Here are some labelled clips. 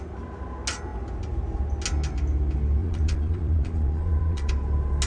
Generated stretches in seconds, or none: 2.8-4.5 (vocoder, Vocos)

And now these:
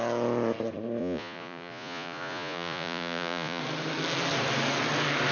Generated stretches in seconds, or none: 1.0-3.6 (vocoder, Vocos)

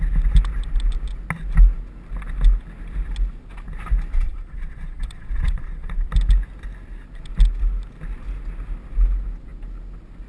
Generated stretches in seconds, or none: 4.1-6.1 (vocoder, Vocos)

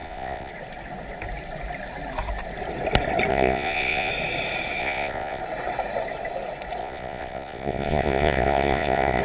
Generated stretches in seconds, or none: 0.0-0.5 (vocoder, Vocos); 3.3-4.1; 4.8-5.4; 6.8-9.2